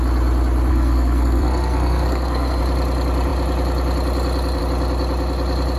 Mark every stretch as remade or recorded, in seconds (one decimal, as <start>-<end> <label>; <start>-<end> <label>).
0.0-0.7 recorded; 0.7-2.6 remade; 2.6-5.8 recorded